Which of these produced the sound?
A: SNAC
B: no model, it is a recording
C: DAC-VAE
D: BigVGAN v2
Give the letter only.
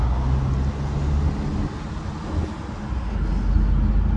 B